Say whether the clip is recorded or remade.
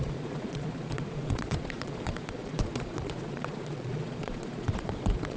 remade